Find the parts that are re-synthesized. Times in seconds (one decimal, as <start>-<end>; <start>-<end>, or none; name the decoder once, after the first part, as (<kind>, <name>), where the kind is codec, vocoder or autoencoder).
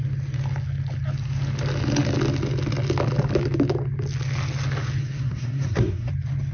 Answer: 5.0-6.1 (codec, SNAC)